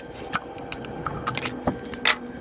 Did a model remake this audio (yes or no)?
no